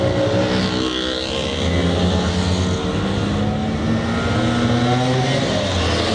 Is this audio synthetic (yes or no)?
no